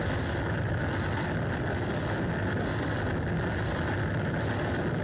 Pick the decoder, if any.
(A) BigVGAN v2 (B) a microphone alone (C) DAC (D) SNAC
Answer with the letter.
B